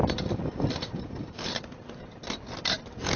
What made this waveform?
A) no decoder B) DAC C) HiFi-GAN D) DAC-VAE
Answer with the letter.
A